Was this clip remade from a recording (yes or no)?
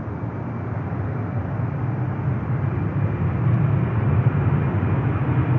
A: no